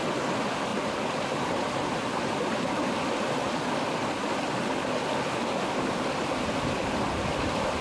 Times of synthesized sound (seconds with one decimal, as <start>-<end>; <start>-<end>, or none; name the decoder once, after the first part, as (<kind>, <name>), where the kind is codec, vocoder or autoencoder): none